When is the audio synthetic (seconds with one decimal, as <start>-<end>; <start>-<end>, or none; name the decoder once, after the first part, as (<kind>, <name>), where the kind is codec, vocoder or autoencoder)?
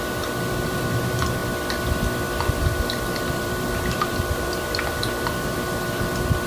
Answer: 0.0-1.4 (vocoder, BigVGAN v2); 2.6-6.5